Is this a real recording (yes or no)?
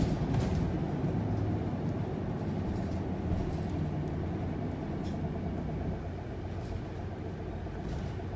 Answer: yes